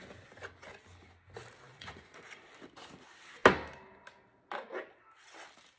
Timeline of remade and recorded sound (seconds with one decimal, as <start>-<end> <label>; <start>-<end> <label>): 0.0-1.7 recorded; 1.7-2.5 remade; 2.5-5.8 recorded